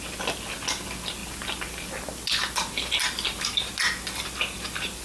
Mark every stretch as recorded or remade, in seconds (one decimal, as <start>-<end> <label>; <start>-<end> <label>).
0.0-5.0 recorded